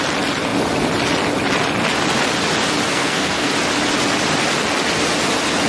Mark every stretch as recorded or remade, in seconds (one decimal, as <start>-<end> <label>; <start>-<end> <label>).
0.0-2.9 recorded; 2.9-3.5 remade; 3.5-5.7 recorded